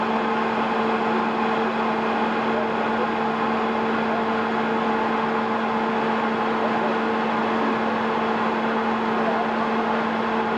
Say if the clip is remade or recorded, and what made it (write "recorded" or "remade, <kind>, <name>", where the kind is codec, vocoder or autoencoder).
recorded